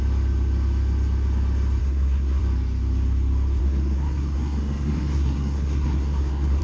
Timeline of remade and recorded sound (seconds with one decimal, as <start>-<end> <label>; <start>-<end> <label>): 0.0-1.8 recorded; 1.8-2.4 remade; 2.4-3.6 recorded; 3.6-6.6 remade